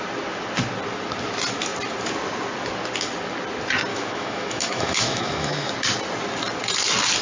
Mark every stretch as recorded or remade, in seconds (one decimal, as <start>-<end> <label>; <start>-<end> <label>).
0.0-3.9 recorded; 3.9-5.7 remade; 5.7-7.2 recorded

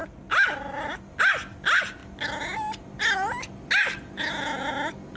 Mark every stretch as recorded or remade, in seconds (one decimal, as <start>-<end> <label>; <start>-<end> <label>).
0.0-0.9 remade; 0.9-5.2 recorded

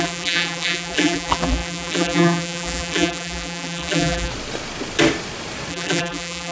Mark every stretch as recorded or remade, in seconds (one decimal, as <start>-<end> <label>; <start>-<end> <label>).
0.0-4.3 remade; 4.3-5.7 recorded; 5.7-6.5 remade

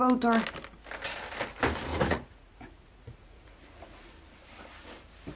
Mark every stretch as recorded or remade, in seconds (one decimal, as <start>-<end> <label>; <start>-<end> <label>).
0.0-1.9 recorded; 1.9-4.1 remade; 4.1-5.4 recorded

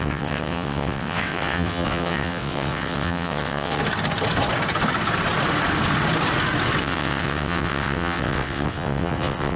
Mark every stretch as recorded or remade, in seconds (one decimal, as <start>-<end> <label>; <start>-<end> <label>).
0.0-3.8 remade; 3.8-6.8 recorded; 6.8-9.6 remade